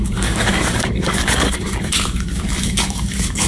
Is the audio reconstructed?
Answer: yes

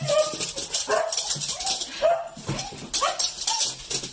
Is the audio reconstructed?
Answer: no